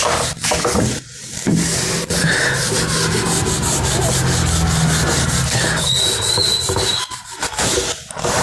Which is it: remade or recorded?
recorded